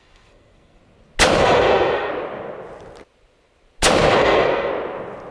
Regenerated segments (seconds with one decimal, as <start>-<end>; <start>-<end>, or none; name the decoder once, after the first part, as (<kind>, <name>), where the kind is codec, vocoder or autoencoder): 0.0-0.8 (codec, SNAC); 1.4-2.1; 4.2-4.7

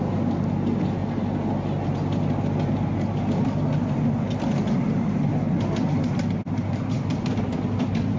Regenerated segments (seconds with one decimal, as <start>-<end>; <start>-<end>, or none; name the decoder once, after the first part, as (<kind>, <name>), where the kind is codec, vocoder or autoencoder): none

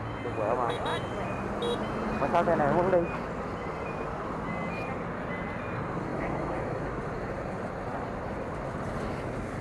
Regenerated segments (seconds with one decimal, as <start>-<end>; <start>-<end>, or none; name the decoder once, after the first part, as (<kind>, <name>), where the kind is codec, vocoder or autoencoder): 6.1-7.0 (autoencoder, DAC-VAE)

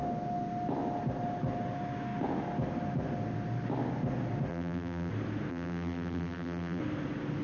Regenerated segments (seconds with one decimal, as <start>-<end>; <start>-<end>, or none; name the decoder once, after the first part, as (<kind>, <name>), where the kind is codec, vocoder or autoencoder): 4.5-5.1 (vocoder, BigVGAN v2); 5.5-6.8

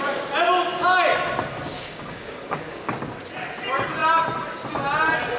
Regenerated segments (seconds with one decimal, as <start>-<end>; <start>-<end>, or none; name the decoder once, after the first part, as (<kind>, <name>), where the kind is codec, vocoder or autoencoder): 1.7-3.0 (codec, DAC)

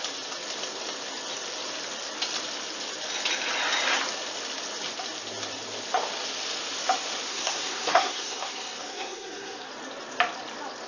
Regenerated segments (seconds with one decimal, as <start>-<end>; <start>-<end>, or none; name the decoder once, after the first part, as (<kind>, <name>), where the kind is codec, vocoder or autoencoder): 7.3-9.7 (codec, SNAC)

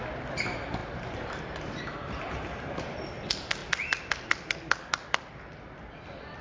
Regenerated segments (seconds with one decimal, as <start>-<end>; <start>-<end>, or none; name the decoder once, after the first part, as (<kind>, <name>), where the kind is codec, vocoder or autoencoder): none